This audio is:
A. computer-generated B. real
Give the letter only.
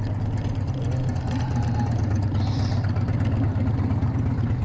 B